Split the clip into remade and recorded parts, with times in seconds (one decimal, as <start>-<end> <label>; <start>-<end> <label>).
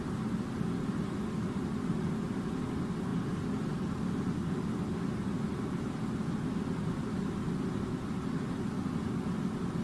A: 0.0-9.8 recorded